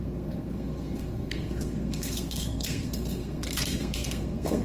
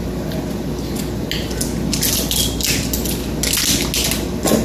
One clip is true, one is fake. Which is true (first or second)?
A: second